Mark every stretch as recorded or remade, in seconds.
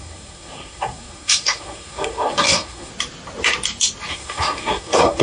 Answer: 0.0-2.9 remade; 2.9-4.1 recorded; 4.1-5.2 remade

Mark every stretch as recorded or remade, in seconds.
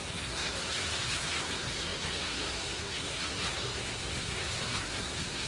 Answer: 0.0-5.5 remade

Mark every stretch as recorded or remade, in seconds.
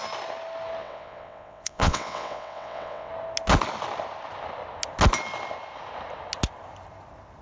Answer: 0.0-0.8 recorded; 0.8-3.1 remade; 3.1-7.4 recorded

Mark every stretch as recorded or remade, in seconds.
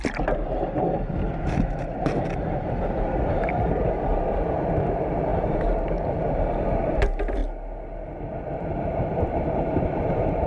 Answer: 0.0-7.4 remade; 7.4-8.5 recorded; 8.5-10.5 remade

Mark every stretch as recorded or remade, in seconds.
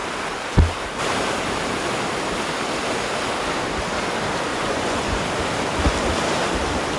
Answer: 0.0-4.5 recorded; 4.5-5.2 remade; 5.2-7.0 recorded